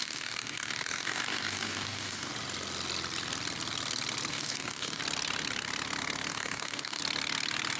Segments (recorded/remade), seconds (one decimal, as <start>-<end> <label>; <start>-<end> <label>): 0.0-2.3 remade; 2.3-4.3 recorded; 4.3-5.0 remade; 5.0-6.3 recorded; 6.3-7.0 remade; 7.0-7.8 recorded